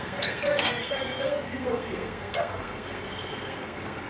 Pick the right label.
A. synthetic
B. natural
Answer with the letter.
A